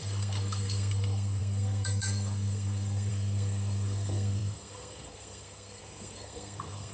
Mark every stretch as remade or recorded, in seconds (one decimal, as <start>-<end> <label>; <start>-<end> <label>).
0.0-6.9 remade